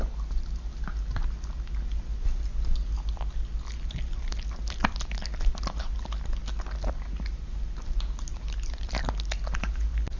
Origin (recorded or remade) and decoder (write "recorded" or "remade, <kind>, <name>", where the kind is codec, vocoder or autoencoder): recorded